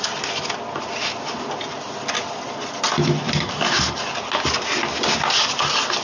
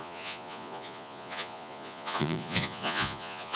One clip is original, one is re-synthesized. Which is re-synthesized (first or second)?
second